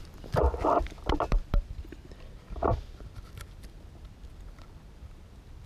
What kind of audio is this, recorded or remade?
remade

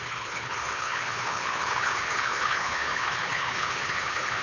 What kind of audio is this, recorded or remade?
remade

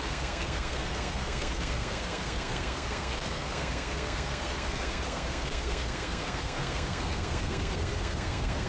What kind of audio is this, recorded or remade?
remade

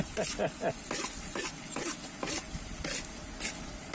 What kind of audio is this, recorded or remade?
recorded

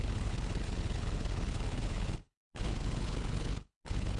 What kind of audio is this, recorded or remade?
remade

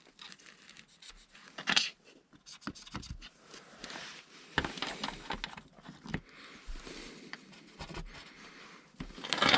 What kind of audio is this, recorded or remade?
recorded